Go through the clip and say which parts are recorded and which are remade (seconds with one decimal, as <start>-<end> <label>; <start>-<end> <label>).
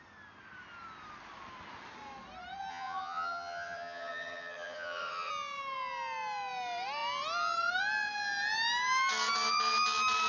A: 0.0-2.7 recorded; 2.7-5.3 remade; 5.3-10.3 recorded